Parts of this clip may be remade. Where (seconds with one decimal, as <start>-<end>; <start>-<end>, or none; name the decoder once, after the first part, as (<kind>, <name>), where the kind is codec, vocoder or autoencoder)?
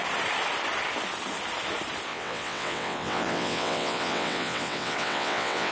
2.1-5.7 (vocoder, WaveNeXt)